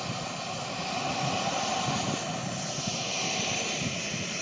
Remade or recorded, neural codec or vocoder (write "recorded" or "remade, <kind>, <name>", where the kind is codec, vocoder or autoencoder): recorded